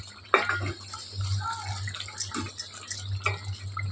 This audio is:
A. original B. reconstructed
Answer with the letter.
A